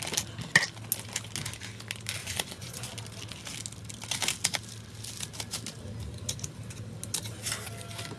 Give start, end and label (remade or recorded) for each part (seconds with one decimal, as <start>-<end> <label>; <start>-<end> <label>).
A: 0.0-2.2 recorded; 2.2-2.9 remade; 2.9-8.2 recorded